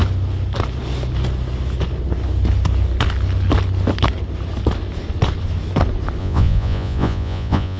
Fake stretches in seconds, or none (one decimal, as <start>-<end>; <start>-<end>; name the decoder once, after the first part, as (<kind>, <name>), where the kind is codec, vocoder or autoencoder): 6.2-7.8 (vocoder, Vocos)